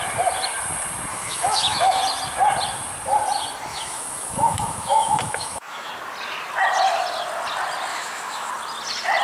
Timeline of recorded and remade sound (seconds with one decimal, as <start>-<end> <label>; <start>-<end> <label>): 0.0-1.1 recorded; 1.1-2.0 remade; 2.0-3.7 recorded; 3.7-5.9 remade; 5.9-7.9 recorded; 7.9-8.5 remade; 8.5-9.2 recorded

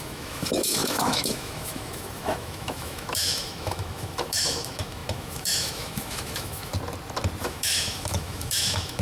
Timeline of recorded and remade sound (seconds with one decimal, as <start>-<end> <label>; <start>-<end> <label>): 0.0-6.7 remade; 6.7-7.4 recorded; 7.4-9.0 remade

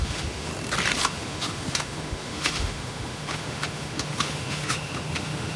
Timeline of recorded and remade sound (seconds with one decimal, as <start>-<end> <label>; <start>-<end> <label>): 0.0-0.5 remade; 0.5-1.1 recorded; 1.1-5.6 remade

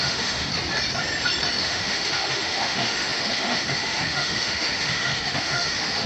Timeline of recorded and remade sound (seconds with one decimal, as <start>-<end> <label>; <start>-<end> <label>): 0.0-0.5 remade; 0.5-1.6 recorded; 1.6-6.1 remade

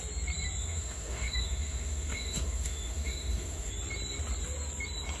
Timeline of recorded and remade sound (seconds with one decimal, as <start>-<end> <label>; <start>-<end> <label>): 0.0-0.6 recorded; 0.6-3.7 remade; 3.7-5.2 recorded